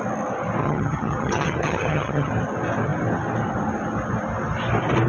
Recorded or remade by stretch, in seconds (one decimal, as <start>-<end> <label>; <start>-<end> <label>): 0.0-0.6 recorded; 0.6-2.3 remade; 2.3-5.1 recorded